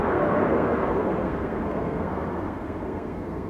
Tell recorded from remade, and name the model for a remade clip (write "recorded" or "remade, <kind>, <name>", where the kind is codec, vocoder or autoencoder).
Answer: remade, codec, SNAC